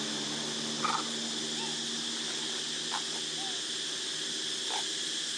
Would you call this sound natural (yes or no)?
yes